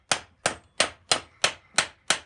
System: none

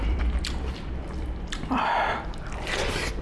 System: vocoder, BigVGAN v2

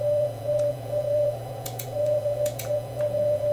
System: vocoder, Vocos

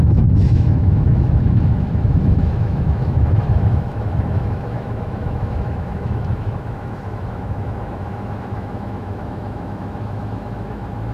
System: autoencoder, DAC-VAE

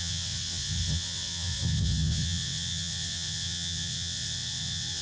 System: vocoder, WaveNeXt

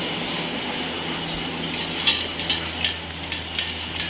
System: none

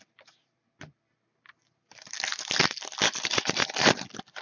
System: vocoder, BigVGAN v2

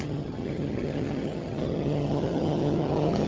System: vocoder, HiFi-GAN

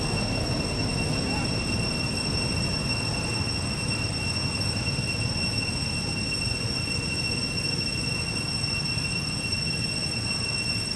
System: none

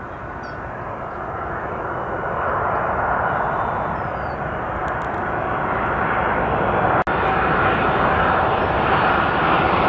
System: none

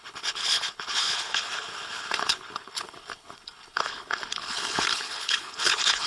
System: codec, HILCodec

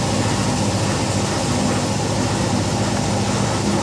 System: none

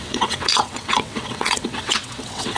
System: vocoder, WaveNeXt